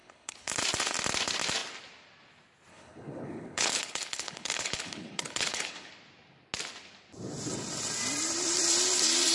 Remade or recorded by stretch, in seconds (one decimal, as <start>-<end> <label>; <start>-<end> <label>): 0.0-0.5 remade; 0.5-2.7 recorded; 2.7-5.9 remade; 5.9-9.3 recorded

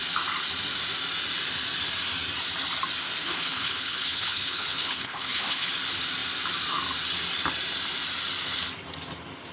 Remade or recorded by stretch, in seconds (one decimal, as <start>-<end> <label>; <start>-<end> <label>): 0.0-3.2 recorded; 3.2-5.7 remade; 5.7-9.5 recorded

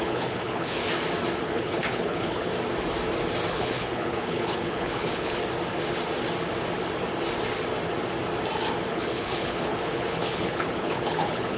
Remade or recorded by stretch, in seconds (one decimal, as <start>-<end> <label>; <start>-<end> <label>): 0.0-0.8 remade; 0.8-1.4 recorded; 1.4-2.5 remade; 2.5-3.5 recorded; 3.5-5.4 remade; 5.4-8.9 recorded; 8.9-11.6 remade

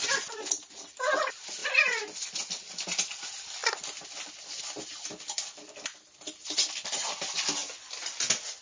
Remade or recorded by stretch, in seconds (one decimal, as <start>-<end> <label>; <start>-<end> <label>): 0.0-8.6 recorded

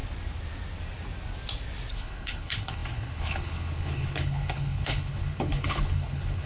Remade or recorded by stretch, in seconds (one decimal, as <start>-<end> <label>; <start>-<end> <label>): 0.0-1.9 recorded; 1.9-6.5 remade